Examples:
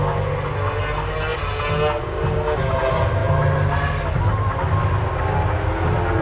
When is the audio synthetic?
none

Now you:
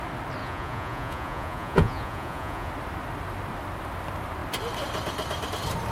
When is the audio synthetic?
0.4-2.7 (vocoder, Vocos)

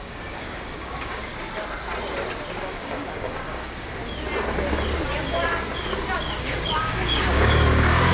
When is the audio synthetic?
0.0-1.3 (codec, DAC); 2.6-4.0; 6.4-8.1